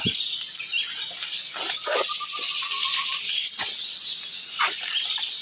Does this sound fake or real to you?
real